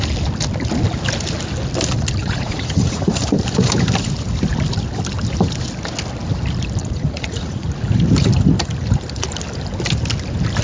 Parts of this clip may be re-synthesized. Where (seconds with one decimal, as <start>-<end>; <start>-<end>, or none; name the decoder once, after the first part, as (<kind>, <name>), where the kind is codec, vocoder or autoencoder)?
2.2-3.1 (vocoder, Vocos); 6.8-7.7